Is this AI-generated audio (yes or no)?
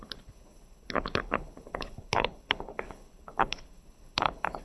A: yes